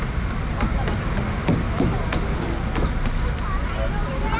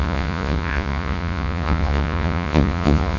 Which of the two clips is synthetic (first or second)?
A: second